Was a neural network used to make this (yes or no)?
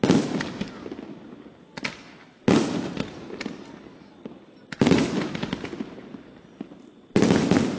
no